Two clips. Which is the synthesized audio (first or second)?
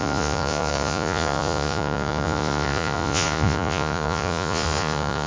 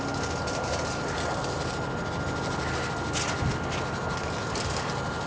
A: first